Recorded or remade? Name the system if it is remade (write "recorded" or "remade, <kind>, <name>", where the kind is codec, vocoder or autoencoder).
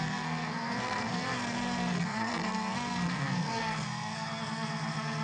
remade, codec, SNAC